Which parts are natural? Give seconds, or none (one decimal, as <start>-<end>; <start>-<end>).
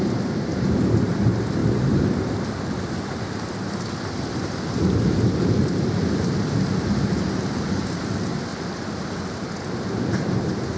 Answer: 0.0-1.6; 6.6-8.5; 9.5-10.8